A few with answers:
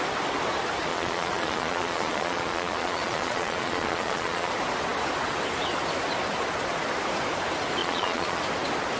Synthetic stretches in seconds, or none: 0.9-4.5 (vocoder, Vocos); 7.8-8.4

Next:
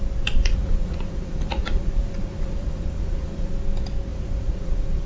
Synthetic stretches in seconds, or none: 0.4-3.5 (vocoder, Vocos); 4.1-5.1

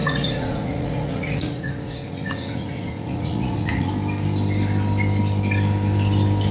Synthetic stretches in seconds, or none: 0.0-3.9 (vocoder, Vocos)

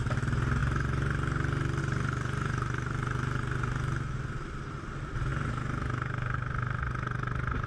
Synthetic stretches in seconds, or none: none

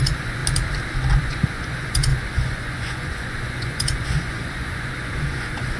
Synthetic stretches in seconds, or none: 0.0-0.4 (vocoder, Vocos); 1.1-5.8

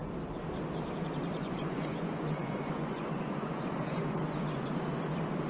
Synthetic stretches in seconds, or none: 1.3-4.6 (vocoder, Vocos)